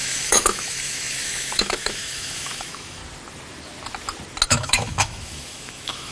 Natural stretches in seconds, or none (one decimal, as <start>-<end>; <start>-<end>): 3.0-4.5